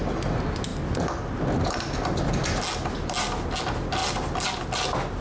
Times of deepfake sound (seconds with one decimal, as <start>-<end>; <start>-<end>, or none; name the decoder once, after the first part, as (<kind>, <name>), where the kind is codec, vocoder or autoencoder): none